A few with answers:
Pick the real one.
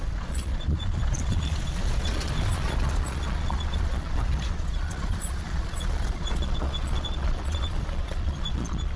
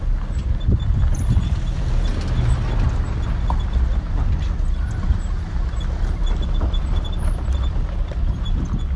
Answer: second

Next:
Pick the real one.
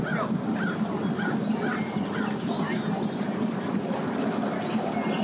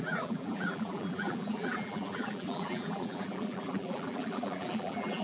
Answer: first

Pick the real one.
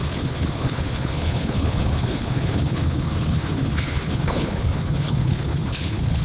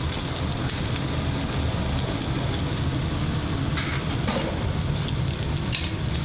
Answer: second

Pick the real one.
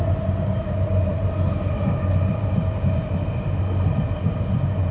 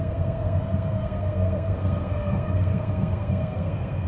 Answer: first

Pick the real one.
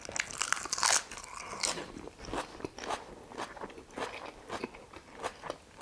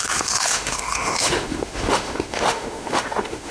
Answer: first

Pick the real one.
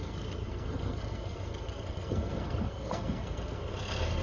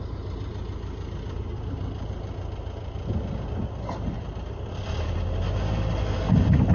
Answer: second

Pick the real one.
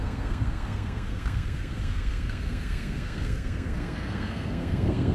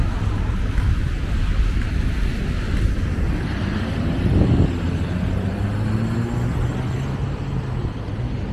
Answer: second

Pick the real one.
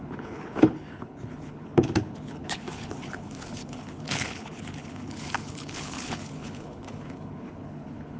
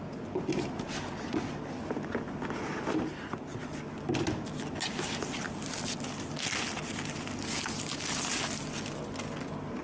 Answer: second